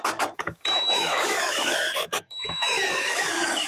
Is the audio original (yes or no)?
no